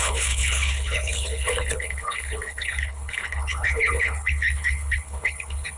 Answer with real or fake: fake